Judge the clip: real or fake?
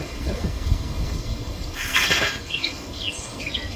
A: fake